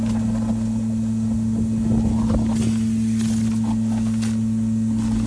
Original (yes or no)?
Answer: yes